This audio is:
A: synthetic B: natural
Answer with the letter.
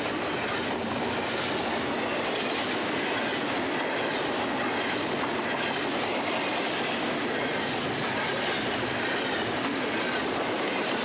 B